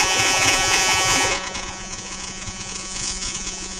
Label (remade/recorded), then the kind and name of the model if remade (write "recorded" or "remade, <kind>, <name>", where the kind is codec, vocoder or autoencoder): remade, vocoder, Vocos